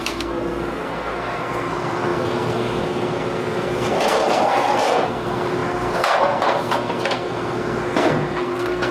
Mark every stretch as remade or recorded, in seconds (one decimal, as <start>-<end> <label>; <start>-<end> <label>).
0.0-8.9 remade